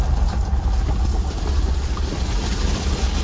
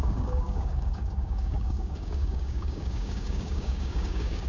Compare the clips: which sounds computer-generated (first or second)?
second